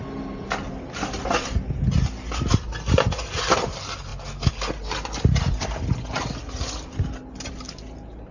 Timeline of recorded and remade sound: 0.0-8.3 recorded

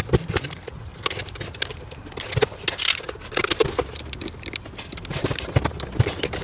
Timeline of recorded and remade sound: 0.0-6.4 recorded

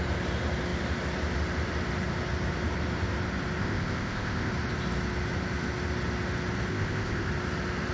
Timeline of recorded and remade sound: 0.0-3.6 recorded; 3.6-4.5 remade; 4.5-6.7 recorded; 6.7-7.3 remade; 7.3-7.9 recorded

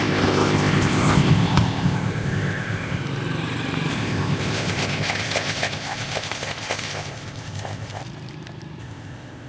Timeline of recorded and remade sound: 0.0-3.0 remade; 3.0-3.9 recorded; 3.9-8.0 remade; 8.0-8.8 recorded; 8.8-9.5 remade

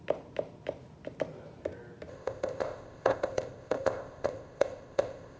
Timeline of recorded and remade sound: 0.0-2.1 recorded; 2.1-5.4 remade

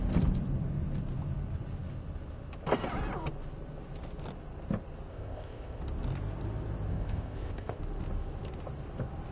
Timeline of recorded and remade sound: 0.0-5.1 recorded; 5.1-5.8 remade; 5.8-6.9 recorded; 6.9-7.8 remade; 7.8-9.3 recorded

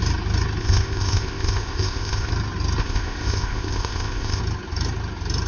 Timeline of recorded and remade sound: 0.0-0.6 recorded; 0.6-2.3 remade; 2.3-2.8 recorded; 2.8-4.4 remade; 4.4-5.5 recorded